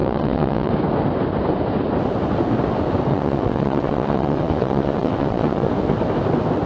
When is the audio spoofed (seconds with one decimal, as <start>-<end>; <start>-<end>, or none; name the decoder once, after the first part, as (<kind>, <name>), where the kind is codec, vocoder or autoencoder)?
0.0-0.7 (vocoder, WaveNeXt); 3.1-5.7